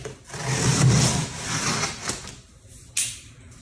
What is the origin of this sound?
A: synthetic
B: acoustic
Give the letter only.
B